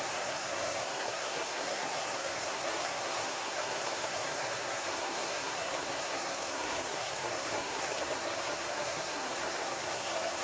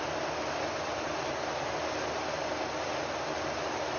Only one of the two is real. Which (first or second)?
second